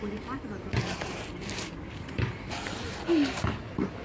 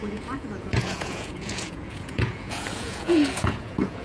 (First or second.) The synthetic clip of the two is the second